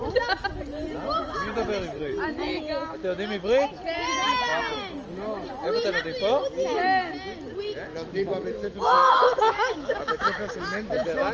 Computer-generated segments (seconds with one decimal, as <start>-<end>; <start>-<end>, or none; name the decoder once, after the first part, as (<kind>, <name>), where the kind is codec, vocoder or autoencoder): 7.9-10.5 (autoencoder, DAC-VAE)